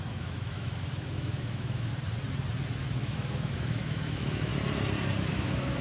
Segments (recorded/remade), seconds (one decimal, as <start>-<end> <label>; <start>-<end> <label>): 0.0-1.9 remade; 1.9-3.0 recorded; 3.0-4.5 remade; 4.5-5.3 recorded; 5.3-5.8 remade